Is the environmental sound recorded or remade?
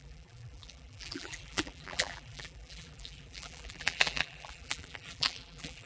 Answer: remade